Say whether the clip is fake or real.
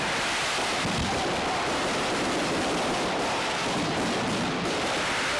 fake